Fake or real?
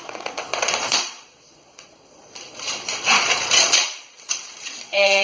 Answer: fake